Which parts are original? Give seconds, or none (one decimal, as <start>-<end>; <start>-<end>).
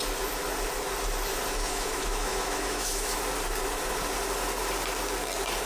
0.0-1.7; 3.2-5.7